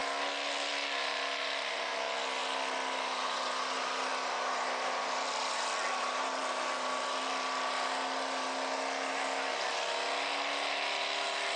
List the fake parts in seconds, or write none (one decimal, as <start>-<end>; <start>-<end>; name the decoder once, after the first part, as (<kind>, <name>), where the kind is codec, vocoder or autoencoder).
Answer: none

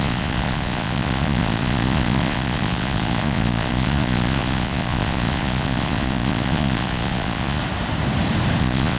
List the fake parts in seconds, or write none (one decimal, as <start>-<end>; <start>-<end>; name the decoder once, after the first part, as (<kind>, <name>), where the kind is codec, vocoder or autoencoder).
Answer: 0.0-7.6 (vocoder, Vocos); 8.6-9.0

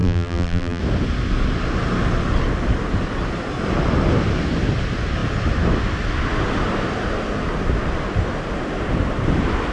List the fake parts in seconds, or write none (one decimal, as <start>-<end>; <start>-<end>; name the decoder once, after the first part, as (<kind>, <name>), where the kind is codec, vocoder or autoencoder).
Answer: 0.0-0.8 (vocoder, BigVGAN v2)

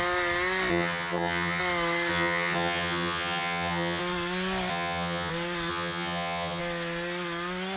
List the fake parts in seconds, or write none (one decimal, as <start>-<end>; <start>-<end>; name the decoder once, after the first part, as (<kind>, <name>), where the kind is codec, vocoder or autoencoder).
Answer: 0.7-1.6 (vocoder, HiFi-GAN); 2.1-4.0; 4.7-5.3; 5.7-6.6

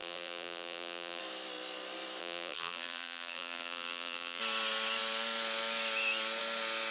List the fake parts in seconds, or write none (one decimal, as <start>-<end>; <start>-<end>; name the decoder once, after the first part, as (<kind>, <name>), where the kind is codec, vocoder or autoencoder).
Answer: 0.0-1.2 (vocoder, BigVGAN v2); 2.2-4.4

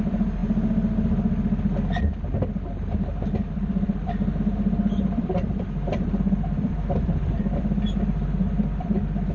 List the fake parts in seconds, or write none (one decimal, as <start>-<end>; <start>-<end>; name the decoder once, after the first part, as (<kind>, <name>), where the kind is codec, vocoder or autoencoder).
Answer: 0.0-0.4 (vocoder, BigVGAN v2); 3.5-9.3

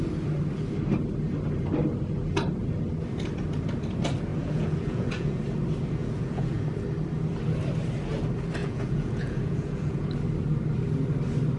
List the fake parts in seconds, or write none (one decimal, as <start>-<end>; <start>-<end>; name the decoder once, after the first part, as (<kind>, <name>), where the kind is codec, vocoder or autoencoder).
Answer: 4.3-5.4 (vocoder, Vocos); 6.0-6.6; 8.6-10.0

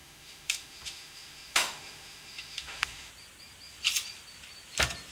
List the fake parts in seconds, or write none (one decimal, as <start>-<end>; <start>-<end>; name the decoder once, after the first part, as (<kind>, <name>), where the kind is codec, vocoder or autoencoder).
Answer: 0.0-3.1 (autoencoder, DAC-VAE)